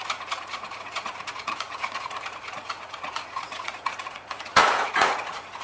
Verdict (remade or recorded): remade